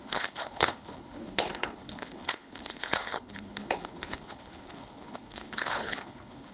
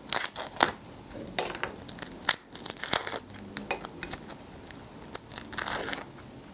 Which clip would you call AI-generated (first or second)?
first